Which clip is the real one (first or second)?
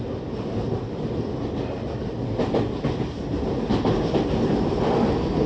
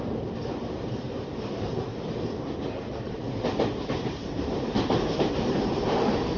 first